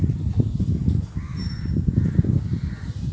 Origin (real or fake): real